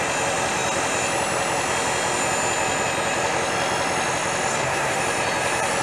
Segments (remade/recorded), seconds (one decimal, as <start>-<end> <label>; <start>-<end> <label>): 0.0-4.5 recorded; 4.5-5.0 remade; 5.0-5.8 recorded

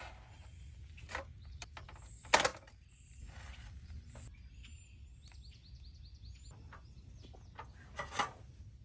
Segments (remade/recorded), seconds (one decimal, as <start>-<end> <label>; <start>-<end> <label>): 0.0-8.8 recorded